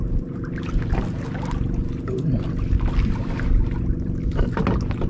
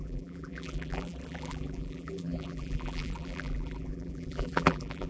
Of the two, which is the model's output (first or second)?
second